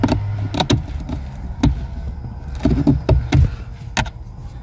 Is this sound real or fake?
real